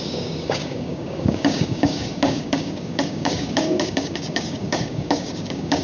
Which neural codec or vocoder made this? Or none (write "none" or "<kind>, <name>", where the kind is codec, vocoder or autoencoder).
codec, DAC